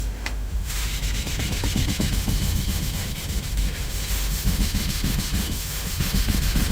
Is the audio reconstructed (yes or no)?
yes